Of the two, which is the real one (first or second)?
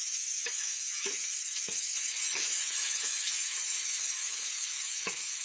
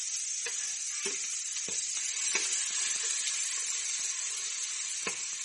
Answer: second